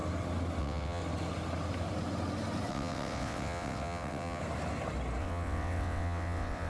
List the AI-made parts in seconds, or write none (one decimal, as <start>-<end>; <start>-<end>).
0.6-1.0; 2.7-4.4; 5.2-6.7